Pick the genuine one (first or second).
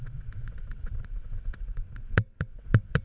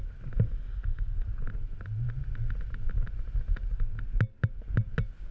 second